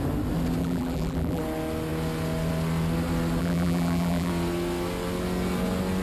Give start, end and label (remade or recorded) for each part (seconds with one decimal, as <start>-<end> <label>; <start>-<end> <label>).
0.0-0.6 recorded; 0.6-1.4 remade; 1.4-3.4 recorded; 3.4-4.3 remade; 4.3-6.0 recorded

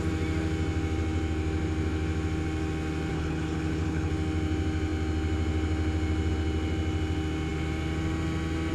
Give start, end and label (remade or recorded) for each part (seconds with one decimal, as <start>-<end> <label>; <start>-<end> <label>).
0.0-3.1 recorded; 3.1-4.1 remade; 4.1-8.7 recorded